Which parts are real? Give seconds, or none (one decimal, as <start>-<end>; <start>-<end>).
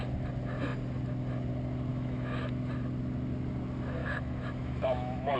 0.0-1.9; 2.5-4.0